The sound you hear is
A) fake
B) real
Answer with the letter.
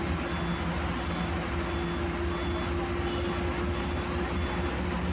B